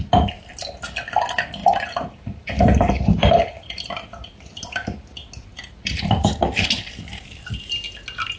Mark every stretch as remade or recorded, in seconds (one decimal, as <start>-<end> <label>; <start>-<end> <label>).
0.0-1.6 recorded; 1.6-3.9 remade; 3.9-5.5 recorded; 5.5-6.0 remade; 6.0-8.4 recorded